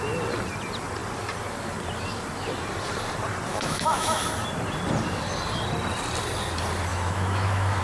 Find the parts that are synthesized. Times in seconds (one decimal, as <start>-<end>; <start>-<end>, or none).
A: 3.5-4.2; 6.9-7.8